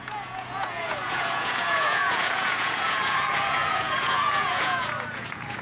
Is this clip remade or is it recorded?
remade